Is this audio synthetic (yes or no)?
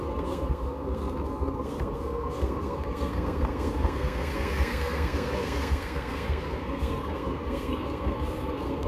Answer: yes